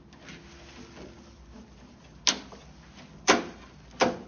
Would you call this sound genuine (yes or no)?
yes